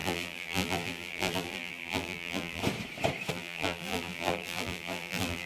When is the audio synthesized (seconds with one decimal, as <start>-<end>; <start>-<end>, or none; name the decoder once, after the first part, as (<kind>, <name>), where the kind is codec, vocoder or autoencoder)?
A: 0.0-2.6 (vocoder, BigVGAN v2); 3.3-5.5